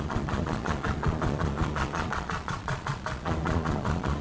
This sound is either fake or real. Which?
fake